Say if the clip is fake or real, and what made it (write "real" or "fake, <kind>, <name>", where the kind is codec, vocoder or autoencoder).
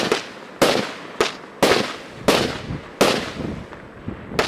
real